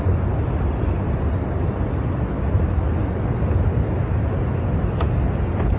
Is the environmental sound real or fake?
real